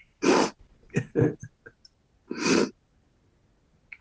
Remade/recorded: recorded